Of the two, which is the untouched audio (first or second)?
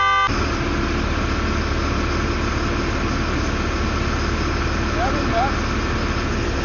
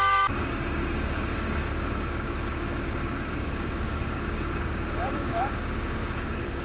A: first